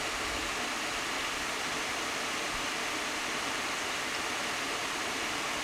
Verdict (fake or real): real